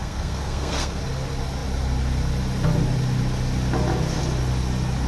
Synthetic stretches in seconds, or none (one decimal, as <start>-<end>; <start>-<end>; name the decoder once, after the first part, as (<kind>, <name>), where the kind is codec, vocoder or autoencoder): 0.0-1.0 (codec, SNAC)